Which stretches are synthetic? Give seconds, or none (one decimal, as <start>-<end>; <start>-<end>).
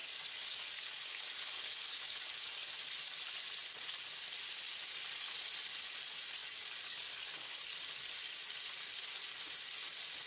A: 0.0-2.8; 6.4-7.6